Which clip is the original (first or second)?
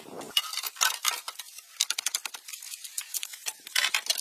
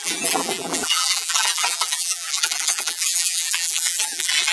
first